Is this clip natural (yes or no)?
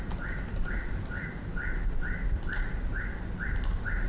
yes